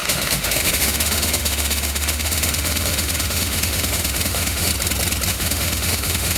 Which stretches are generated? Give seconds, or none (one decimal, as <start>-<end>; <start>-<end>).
0.0-4.7; 5.3-6.4